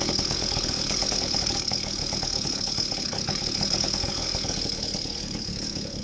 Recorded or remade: remade